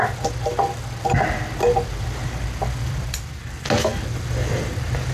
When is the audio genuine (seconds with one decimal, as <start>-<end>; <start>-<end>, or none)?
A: 0.0-5.1